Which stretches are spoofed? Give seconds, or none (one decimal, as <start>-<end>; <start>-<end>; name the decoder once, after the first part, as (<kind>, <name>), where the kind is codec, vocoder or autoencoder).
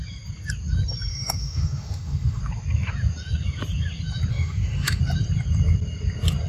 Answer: 1.1-2.4 (autoencoder, DAC-VAE); 4.3-5.0